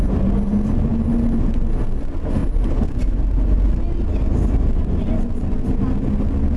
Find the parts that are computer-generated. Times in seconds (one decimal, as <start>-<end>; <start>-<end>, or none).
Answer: none